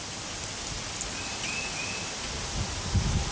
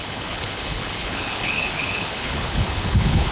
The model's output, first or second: second